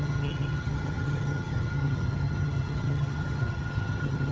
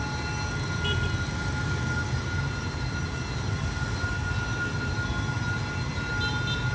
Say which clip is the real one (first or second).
second